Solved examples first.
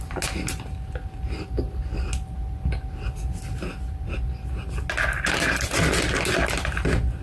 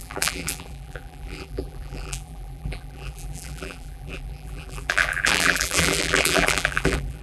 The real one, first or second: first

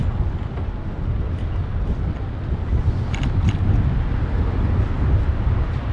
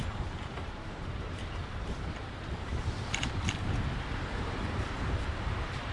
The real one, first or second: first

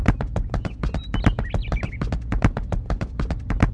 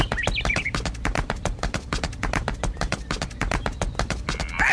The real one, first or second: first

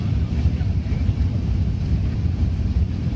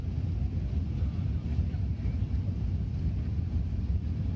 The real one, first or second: second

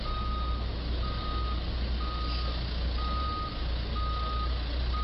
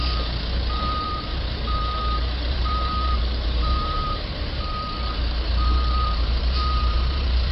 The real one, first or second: first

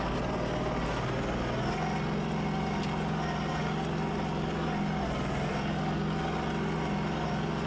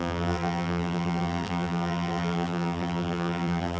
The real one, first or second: first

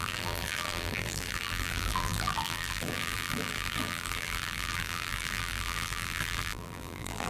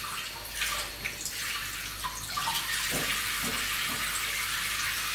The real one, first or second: second